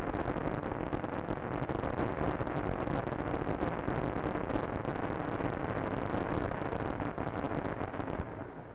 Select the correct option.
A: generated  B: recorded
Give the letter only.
B